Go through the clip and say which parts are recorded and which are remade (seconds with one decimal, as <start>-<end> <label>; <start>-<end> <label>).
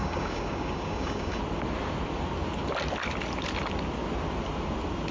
0.0-1.4 remade; 1.4-5.1 recorded